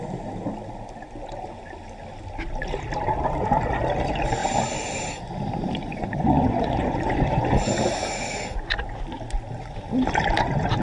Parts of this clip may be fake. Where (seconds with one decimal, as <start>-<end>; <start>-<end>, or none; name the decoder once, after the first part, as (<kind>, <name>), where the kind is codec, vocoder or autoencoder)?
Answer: 5.9-7.7 (vocoder, Vocos)